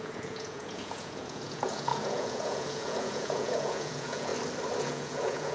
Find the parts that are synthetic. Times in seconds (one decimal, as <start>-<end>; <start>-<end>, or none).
0.0-4.3; 4.8-5.5